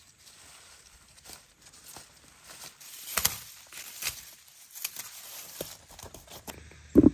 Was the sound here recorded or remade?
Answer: recorded